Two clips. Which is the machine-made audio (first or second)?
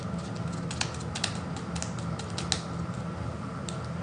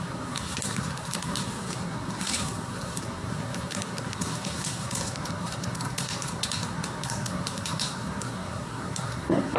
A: second